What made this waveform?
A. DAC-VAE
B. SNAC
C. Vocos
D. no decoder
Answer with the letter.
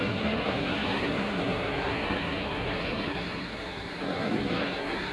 B